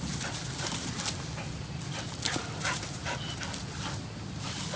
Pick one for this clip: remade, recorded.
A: recorded